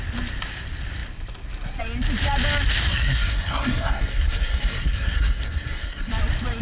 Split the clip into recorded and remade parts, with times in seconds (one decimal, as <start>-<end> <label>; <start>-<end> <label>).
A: 0.0-2.9 recorded; 2.9-6.1 remade; 6.1-6.6 recorded